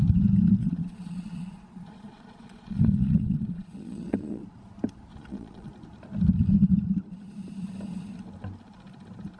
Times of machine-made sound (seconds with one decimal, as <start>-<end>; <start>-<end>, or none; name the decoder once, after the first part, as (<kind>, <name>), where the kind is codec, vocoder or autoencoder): 0.6-4.4 (vocoder, Vocos); 5.1-5.7